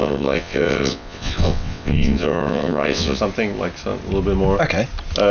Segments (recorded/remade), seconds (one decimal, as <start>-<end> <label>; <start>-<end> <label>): 0.0-3.2 remade; 3.2-5.3 recorded